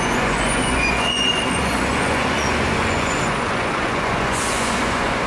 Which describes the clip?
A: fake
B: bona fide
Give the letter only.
A